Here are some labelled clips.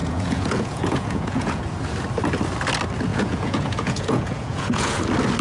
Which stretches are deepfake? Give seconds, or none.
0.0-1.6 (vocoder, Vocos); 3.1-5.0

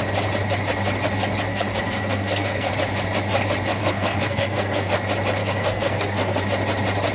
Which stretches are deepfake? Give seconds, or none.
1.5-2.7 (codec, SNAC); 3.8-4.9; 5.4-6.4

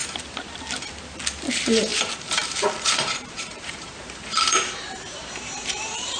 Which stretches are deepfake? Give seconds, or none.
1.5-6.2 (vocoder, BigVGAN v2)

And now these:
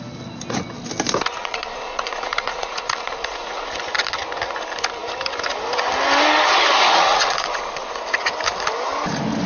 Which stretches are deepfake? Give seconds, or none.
1.4-3.7 (vocoder, Vocos); 7.1-7.9

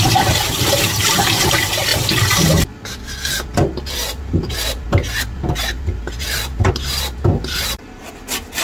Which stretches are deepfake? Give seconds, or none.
0.0-1.9 (vocoder, BigVGAN v2); 6.7-8.6

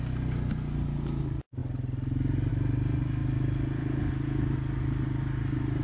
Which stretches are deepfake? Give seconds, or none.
none

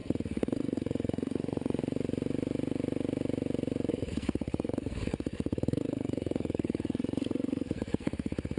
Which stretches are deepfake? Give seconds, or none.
0.0-1.8 (codec, SNAC); 3.9-8.6

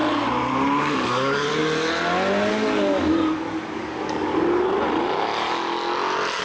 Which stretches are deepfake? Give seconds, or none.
0.8-1.6 (codec, DAC); 2.5-4.3